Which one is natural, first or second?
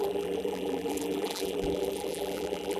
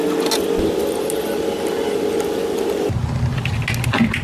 second